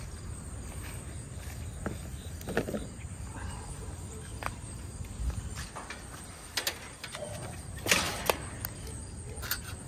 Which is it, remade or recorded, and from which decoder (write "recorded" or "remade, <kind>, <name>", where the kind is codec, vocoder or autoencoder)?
recorded